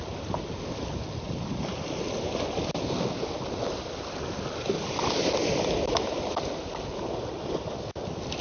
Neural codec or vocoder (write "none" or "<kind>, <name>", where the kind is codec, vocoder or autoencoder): none